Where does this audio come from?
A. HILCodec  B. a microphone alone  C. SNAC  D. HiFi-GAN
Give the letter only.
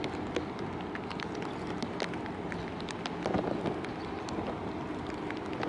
B